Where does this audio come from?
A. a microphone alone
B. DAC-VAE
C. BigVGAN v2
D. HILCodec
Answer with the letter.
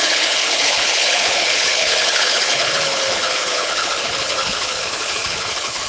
D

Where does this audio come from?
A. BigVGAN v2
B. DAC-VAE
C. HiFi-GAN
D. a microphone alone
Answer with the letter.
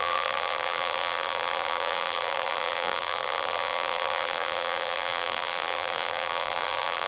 A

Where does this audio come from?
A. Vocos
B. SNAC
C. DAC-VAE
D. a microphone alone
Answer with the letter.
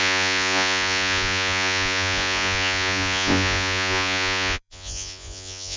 A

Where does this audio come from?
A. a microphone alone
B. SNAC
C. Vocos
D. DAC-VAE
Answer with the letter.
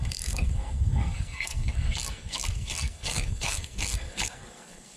B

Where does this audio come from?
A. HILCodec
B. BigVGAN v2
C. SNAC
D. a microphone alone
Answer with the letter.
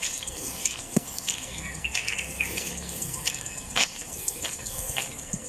C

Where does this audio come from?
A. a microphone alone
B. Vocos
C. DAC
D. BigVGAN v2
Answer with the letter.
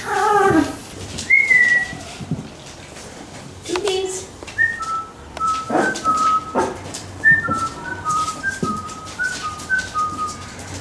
D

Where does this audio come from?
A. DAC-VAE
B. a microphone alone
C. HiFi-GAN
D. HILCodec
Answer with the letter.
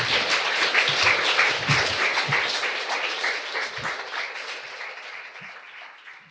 B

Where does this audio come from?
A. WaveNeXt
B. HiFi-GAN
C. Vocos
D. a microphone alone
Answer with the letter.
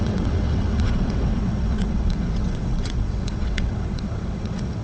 A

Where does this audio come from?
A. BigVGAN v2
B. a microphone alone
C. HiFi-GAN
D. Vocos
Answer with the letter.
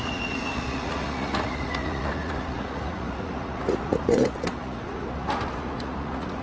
D